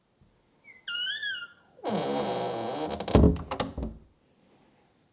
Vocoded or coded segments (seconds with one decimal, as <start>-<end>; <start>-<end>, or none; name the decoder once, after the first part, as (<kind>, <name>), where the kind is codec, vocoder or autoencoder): none